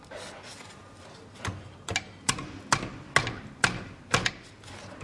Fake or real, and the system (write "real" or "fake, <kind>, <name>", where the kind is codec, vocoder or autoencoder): real